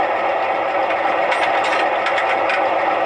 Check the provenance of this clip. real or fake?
real